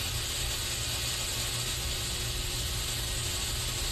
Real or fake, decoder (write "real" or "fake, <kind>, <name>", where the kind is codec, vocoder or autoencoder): real